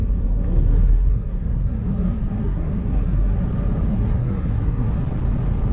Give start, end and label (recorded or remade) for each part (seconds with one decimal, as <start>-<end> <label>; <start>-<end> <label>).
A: 0.0-3.4 remade; 3.4-3.9 recorded; 3.9-4.9 remade; 4.9-5.7 recorded